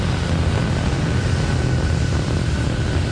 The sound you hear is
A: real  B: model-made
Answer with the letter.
A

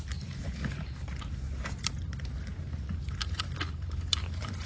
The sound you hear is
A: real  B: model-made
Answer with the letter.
B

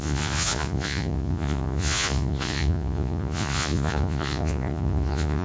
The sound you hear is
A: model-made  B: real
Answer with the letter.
A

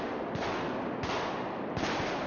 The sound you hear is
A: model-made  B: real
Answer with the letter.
B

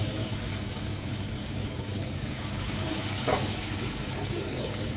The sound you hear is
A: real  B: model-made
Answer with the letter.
B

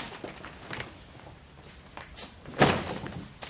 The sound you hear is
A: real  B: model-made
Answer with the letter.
A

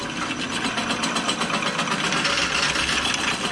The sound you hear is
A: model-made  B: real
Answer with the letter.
B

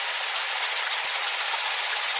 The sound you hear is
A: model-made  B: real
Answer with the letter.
B